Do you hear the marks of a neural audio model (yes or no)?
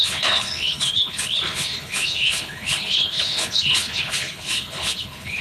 yes